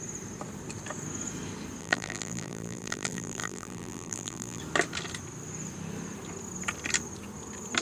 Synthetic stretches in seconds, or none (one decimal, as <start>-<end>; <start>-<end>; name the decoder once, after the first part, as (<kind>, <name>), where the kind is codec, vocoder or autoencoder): 1.8-4.6 (vocoder, BigVGAN v2)